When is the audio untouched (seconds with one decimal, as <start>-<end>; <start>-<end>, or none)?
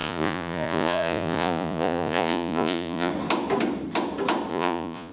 3.1-4.5